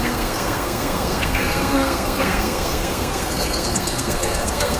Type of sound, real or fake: fake